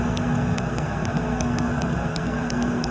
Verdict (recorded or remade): remade